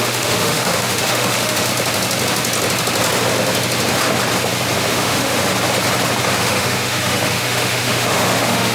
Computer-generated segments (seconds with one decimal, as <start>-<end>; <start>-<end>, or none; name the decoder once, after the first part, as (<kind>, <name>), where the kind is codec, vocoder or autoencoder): 0.0-1.7 (autoencoder, DAC-VAE); 4.9-5.4; 6.4-8.7